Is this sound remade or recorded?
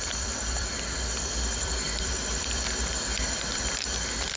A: remade